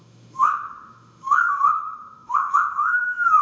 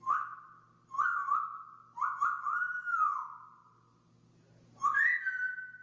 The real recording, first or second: second